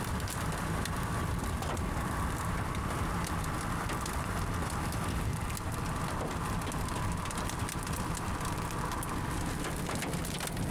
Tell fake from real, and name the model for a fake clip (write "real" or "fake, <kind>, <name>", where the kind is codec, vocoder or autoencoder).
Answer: real